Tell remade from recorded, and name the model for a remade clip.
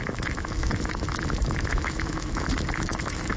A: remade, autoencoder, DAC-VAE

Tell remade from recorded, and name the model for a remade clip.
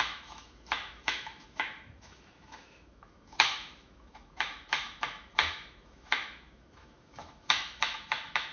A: remade, autoencoder, DAC-VAE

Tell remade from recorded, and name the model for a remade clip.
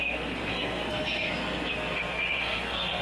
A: remade, codec, SNAC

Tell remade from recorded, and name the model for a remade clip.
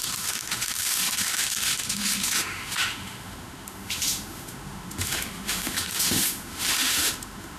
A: remade, autoencoder, DAC-VAE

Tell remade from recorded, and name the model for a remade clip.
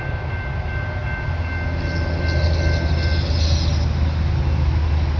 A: recorded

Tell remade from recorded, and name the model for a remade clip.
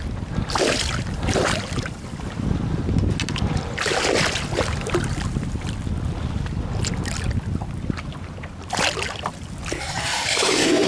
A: recorded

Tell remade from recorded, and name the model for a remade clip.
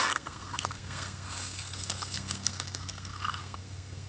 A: remade, codec, SNAC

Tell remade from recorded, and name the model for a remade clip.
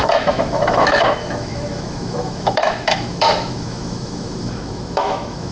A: remade, autoencoder, DAC-VAE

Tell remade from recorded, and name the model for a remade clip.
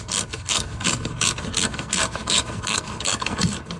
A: remade, codec, SNAC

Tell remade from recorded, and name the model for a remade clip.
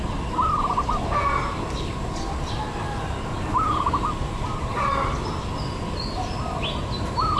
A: recorded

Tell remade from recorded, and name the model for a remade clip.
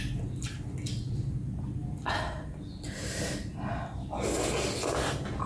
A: recorded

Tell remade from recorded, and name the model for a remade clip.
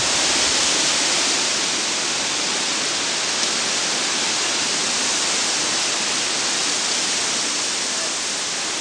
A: recorded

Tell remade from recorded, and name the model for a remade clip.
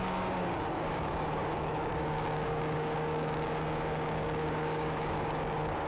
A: remade, codec, DAC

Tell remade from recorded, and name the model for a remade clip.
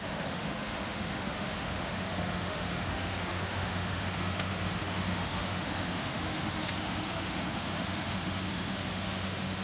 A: remade, autoencoder, DAC-VAE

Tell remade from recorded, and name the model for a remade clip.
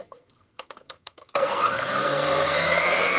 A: remade, codec, SNAC